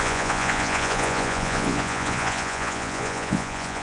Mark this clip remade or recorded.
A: remade